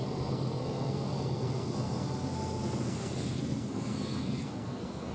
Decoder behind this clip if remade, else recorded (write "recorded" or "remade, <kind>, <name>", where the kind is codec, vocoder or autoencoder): remade, codec, SNAC